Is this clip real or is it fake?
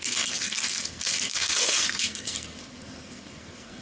fake